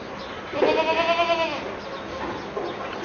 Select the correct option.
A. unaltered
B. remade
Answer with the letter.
A